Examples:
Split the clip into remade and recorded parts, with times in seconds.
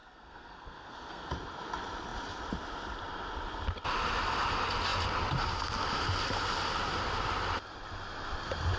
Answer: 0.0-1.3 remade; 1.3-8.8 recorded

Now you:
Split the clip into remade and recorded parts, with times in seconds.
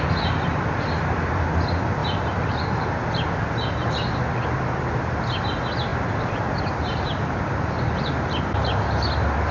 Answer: 0.0-9.5 recorded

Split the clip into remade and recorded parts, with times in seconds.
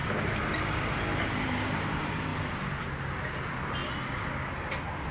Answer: 0.0-1.2 recorded; 1.2-2.3 remade; 2.3-3.2 recorded; 3.2-3.8 remade; 3.8-5.1 recorded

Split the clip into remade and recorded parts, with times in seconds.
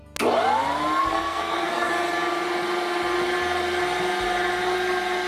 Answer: 0.0-1.0 recorded; 1.0-1.9 remade; 1.9-5.3 recorded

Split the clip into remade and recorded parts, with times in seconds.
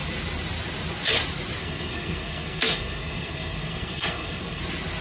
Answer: 0.0-1.6 recorded; 1.6-4.6 remade; 4.6-5.0 recorded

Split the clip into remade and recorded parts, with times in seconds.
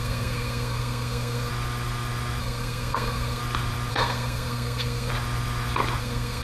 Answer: 0.0-1.5 remade; 1.5-2.4 recorded; 2.4-3.4 remade; 3.4-3.9 recorded; 3.9-5.1 remade; 5.1-6.0 recorded; 6.0-6.4 remade